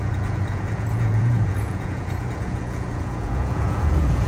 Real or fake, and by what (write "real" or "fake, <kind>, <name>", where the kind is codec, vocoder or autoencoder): fake, vocoder, Vocos